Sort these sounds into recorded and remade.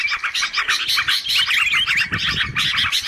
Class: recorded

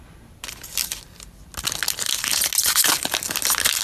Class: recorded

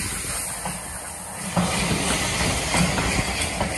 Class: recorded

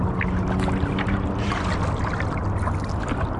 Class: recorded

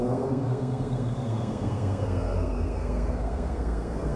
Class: remade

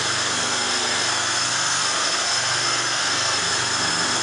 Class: remade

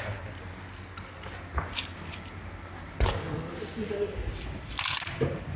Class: recorded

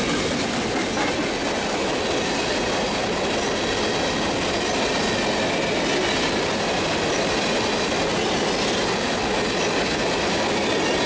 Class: recorded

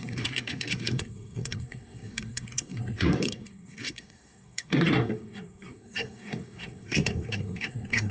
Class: remade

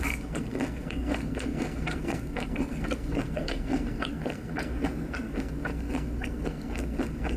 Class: remade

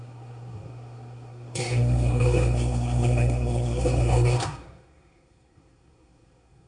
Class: remade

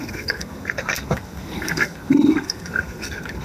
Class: remade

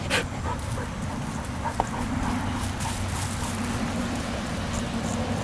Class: recorded